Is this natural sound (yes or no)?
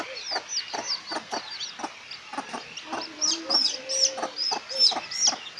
yes